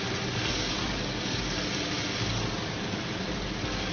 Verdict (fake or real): real